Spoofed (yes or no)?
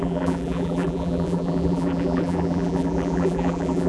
yes